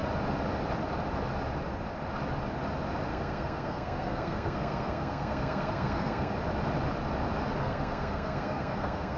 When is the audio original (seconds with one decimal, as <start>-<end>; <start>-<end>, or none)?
0.0-3.1; 6.3-7.6